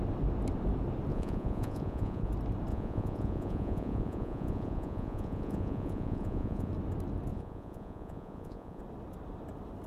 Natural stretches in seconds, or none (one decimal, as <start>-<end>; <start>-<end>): 0.0-1.1; 2.3-2.7; 6.7-7.3; 8.8-9.9